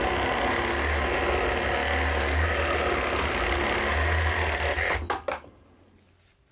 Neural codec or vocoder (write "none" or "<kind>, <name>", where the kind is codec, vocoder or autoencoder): none